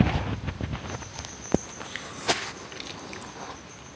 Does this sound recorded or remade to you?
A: recorded